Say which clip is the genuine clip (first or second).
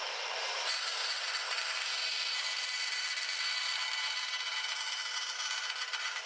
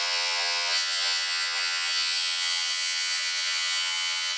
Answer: first